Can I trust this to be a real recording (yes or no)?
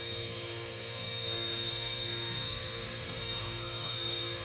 no